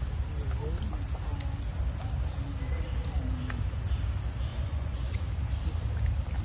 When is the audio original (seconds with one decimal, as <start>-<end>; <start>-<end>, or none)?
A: 0.0-4.5; 5.2-6.4